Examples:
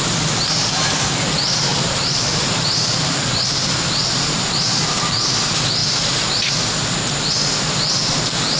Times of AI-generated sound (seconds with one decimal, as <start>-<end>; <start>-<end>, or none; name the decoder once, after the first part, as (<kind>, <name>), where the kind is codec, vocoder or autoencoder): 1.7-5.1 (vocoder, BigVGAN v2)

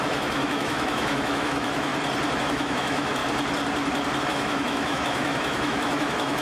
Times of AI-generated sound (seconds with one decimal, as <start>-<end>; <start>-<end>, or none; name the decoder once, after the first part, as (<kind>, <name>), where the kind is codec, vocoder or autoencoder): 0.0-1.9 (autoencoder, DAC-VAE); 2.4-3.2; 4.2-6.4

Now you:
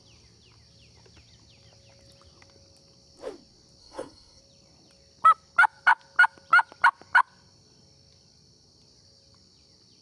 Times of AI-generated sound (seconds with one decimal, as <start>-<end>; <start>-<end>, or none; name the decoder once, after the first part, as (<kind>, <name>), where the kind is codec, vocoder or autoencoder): 3.8-4.4 (codec, SNAC)

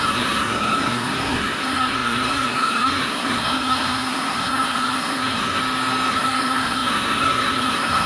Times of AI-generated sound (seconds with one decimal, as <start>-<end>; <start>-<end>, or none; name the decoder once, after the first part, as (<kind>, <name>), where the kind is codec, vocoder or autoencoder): 0.0-5.6 (codec, SNAC); 6.1-8.1

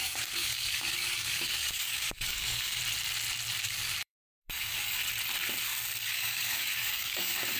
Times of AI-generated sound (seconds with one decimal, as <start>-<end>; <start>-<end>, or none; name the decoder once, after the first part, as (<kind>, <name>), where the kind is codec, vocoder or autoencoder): 0.0-2.8 (codec, DAC); 3.6-5.0; 6.0-7.6

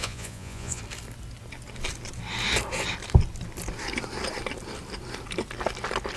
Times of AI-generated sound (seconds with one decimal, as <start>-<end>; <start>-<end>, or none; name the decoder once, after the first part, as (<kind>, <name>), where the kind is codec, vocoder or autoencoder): 0.0-0.8 (vocoder, Vocos)